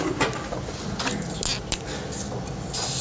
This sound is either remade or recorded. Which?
recorded